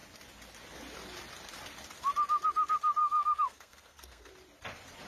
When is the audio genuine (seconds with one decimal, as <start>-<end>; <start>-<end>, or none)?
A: 0.0-3.0; 4.3-5.1